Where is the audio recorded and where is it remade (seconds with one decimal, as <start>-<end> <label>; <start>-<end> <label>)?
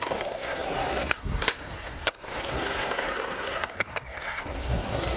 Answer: 0.0-5.2 remade